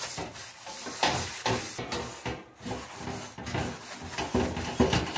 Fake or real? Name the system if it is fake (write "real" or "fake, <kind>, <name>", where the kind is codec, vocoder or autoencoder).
real